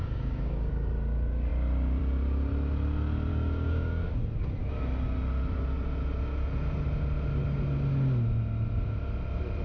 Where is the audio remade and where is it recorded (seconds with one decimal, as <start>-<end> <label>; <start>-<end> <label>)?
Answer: 0.0-0.7 remade; 0.7-3.3 recorded; 3.3-4.1 remade; 4.1-9.6 recorded